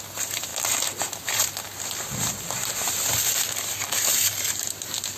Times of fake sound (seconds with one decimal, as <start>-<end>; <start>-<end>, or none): none